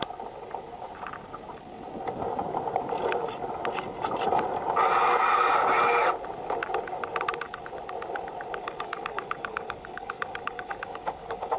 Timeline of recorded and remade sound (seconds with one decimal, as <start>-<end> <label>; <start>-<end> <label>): 0.0-8.6 recorded; 8.6-11.6 remade